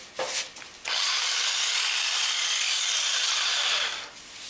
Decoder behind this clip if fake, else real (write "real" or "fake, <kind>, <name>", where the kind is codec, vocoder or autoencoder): real